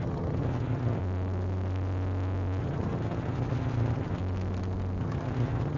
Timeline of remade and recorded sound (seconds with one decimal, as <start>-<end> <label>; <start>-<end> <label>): 0.0-1.0 remade; 1.0-2.6 recorded; 2.6-4.2 remade; 4.2-5.0 recorded; 5.0-5.8 remade